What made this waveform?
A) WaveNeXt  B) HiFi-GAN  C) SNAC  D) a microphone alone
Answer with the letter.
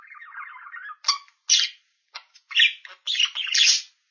D